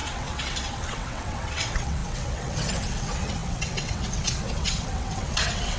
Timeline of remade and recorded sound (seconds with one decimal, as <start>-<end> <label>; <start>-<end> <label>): 0.0-5.8 remade